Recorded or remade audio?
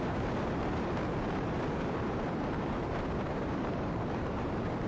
remade